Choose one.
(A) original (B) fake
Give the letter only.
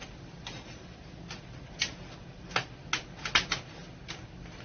A